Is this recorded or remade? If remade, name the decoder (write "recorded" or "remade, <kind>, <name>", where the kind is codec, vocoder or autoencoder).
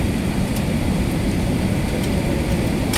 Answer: remade, vocoder, BigVGAN v2